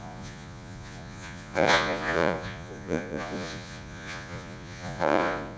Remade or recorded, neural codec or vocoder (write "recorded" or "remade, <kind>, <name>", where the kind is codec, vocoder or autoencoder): remade, vocoder, Vocos